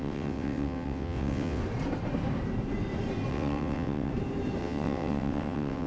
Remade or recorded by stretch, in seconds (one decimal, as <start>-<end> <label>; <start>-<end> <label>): 0.0-1.6 remade; 1.6-3.3 recorded; 3.3-4.1 remade; 4.1-4.6 recorded; 4.6-5.9 remade